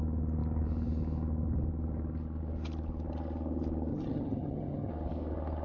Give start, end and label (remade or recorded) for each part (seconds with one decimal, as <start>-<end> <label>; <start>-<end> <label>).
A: 0.0-3.9 recorded; 3.9-4.9 remade; 4.9-5.6 recorded